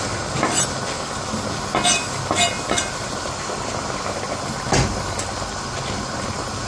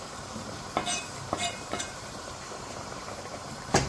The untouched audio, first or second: first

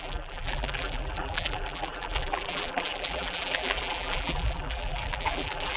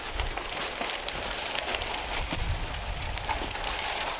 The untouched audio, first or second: second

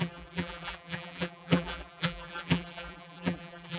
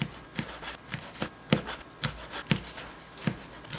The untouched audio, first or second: second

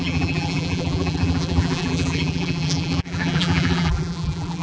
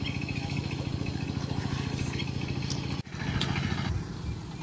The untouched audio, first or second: second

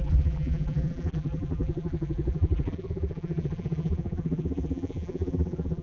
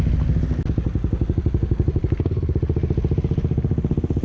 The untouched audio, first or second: second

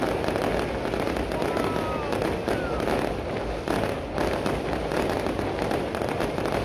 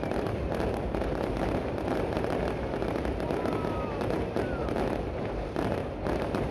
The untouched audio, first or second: first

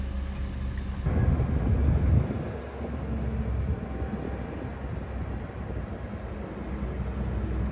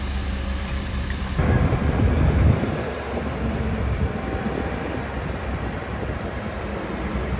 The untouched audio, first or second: first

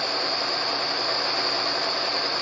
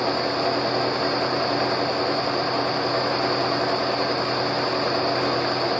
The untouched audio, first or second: second